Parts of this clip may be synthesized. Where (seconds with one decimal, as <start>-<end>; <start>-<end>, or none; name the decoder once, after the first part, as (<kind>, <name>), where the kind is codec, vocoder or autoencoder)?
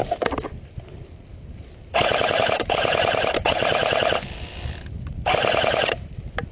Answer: 2.4-3.8 (vocoder, BigVGAN v2); 5.9-6.5